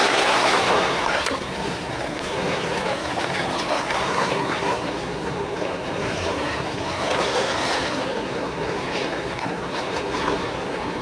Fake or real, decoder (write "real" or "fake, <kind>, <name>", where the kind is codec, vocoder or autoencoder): fake, codec, SNAC